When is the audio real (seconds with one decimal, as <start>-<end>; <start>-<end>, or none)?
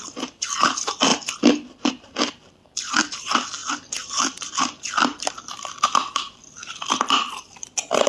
1.1-1.9; 3.6-4.9